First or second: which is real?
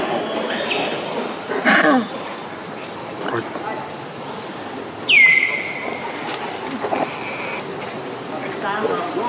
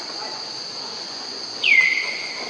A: first